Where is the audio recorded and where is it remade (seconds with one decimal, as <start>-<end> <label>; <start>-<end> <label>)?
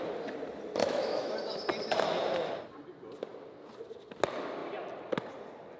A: 0.0-0.8 recorded; 0.8-1.3 remade; 1.3-5.8 recorded